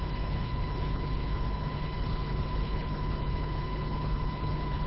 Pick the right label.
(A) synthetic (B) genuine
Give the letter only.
A